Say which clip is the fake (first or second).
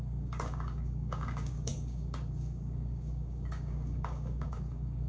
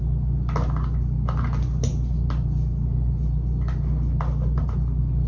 first